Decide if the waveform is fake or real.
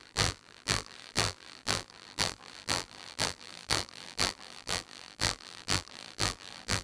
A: fake